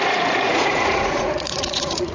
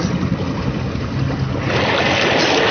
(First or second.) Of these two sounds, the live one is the second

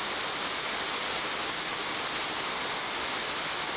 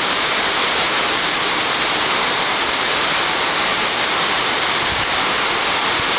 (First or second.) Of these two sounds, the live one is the first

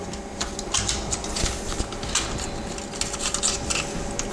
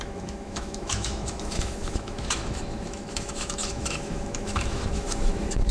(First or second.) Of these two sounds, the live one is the first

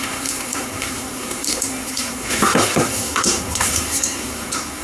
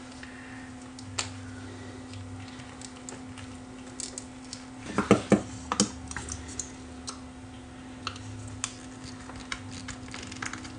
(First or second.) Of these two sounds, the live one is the second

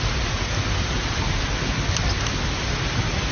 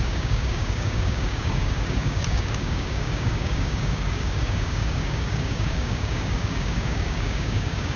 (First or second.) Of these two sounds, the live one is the first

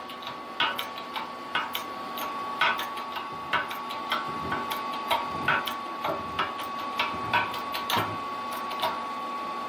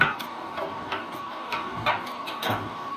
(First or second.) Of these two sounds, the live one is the first